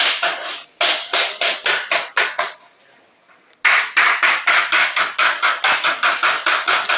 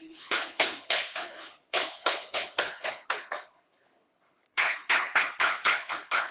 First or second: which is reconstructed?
second